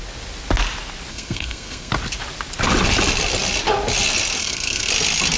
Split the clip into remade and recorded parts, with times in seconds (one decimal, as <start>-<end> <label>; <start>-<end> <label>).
0.0-1.1 recorded; 1.1-1.9 remade; 1.9-4.4 recorded; 4.4-4.9 remade; 4.9-5.4 recorded